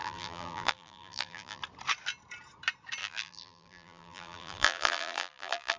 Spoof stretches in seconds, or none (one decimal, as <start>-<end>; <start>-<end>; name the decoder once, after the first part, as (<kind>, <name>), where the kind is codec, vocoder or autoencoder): 0.0-1.6 (vocoder, BigVGAN v2); 3.0-5.8